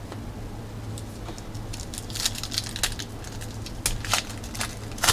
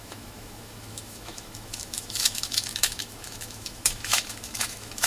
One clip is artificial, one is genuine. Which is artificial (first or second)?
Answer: second